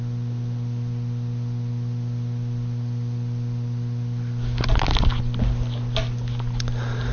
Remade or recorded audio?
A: recorded